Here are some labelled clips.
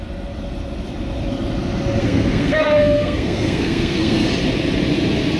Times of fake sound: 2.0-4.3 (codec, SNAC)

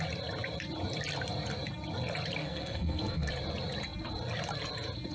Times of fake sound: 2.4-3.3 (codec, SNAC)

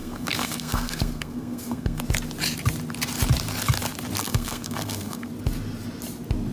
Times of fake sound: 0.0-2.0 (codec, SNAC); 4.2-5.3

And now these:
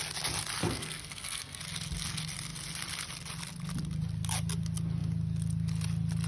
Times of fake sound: 0.6-1.6 (codec, SNAC)

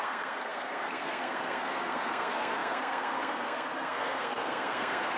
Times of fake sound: 0.0-5.2 (codec, SNAC)